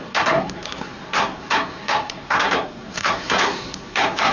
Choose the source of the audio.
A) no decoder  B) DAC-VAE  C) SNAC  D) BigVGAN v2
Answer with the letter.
C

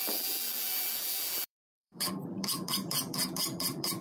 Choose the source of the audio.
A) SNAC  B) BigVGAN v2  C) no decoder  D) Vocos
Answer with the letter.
B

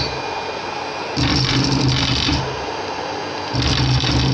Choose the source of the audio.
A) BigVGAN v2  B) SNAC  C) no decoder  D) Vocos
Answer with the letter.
C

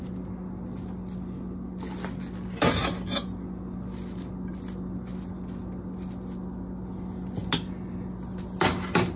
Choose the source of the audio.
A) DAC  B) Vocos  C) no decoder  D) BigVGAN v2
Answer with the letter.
C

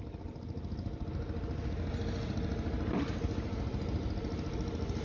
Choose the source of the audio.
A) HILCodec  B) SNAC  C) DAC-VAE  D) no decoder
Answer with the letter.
D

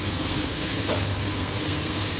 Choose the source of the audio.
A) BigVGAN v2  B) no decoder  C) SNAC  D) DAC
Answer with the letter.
C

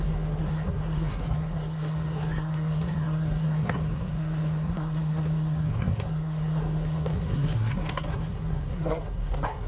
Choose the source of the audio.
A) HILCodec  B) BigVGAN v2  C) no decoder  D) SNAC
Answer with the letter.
D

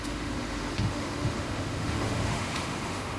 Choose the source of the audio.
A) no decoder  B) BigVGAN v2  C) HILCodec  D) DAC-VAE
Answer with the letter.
D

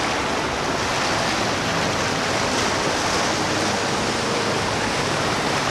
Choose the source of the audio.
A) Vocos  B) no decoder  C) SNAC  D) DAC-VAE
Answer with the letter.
B